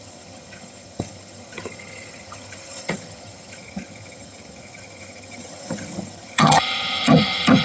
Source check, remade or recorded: remade